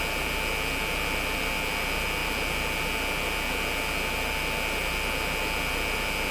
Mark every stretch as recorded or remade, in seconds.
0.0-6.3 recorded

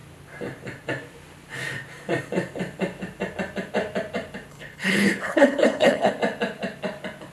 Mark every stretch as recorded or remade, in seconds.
0.0-4.5 recorded; 4.5-6.1 remade; 6.1-7.3 recorded